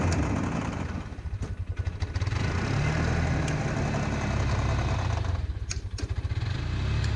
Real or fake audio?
real